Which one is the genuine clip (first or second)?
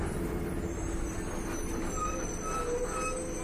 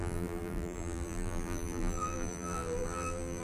first